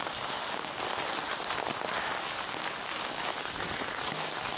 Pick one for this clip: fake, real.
real